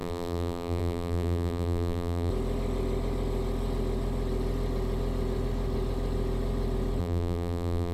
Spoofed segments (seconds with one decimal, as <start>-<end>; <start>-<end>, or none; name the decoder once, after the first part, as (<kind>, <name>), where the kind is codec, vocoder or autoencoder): 0.0-2.3 (vocoder, BigVGAN v2); 7.0-7.9